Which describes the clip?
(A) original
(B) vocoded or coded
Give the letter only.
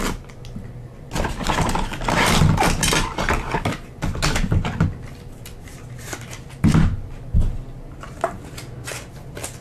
A